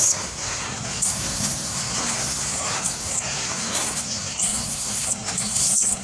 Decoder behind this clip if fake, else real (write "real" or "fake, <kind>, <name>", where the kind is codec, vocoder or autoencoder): fake, codec, SNAC